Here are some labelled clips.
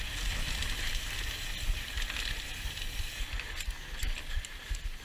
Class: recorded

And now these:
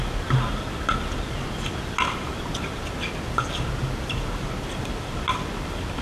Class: recorded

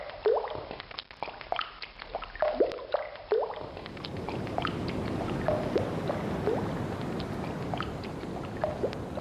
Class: recorded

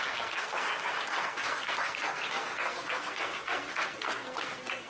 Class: remade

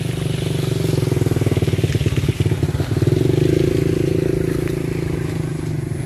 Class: recorded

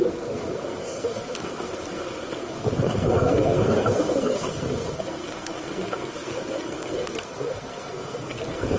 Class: remade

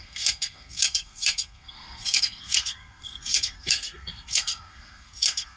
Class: remade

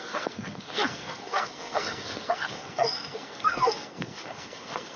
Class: remade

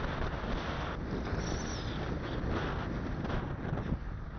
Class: recorded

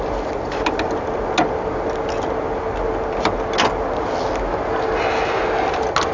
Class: recorded